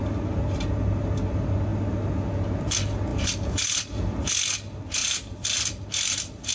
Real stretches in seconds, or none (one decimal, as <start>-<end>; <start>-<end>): 0.0-3.1; 3.8-5.0